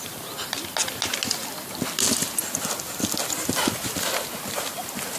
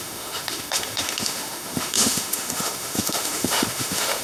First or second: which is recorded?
first